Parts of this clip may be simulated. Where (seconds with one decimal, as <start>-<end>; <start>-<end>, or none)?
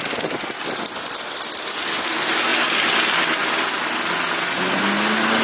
none